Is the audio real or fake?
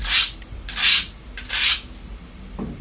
real